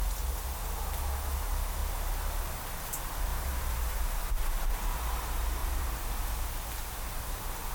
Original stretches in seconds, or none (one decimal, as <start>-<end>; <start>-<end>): 0.0-3.3; 4.7-5.6; 6.5-7.7